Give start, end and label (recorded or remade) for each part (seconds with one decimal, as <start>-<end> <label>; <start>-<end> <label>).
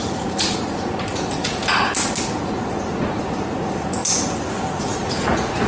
0.0-1.6 remade; 1.6-2.4 recorded; 2.4-4.0 remade; 4.0-4.6 recorded; 4.6-5.7 remade